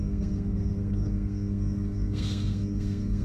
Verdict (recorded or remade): remade